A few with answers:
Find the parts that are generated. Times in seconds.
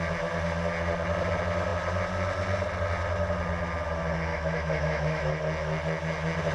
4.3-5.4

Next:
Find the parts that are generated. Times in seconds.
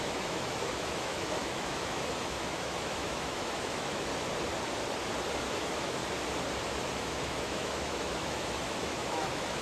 0.0-4.1; 5.4-6.0; 7.0-9.6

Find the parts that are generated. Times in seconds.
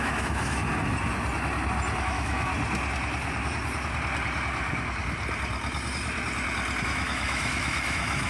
0.0-0.6; 2.0-2.5; 6.8-8.3